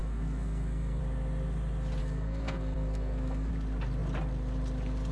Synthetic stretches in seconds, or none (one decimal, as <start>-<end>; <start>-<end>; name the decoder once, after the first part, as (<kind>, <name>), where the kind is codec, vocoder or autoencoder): 0.0-1.0 (codec, SNAC); 2.0-3.5